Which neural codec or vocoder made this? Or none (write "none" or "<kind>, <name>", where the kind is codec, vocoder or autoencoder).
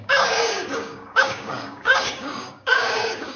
codec, DAC